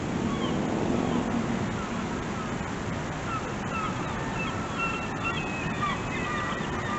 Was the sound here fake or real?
real